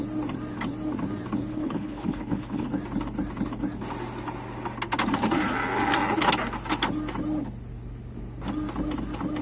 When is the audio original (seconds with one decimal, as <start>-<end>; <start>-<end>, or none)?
0.0-1.5; 2.7-9.4